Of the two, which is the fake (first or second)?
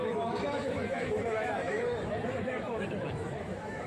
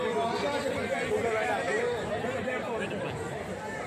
first